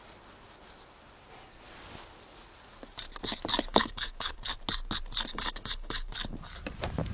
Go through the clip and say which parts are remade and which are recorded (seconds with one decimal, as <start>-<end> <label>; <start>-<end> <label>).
0.0-3.7 recorded; 3.7-4.4 remade; 4.4-5.3 recorded; 5.3-6.1 remade; 6.1-7.1 recorded